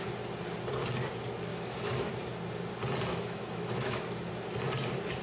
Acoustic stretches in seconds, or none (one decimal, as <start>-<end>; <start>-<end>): 0.0-1.5; 2.1-3.1; 4.0-5.2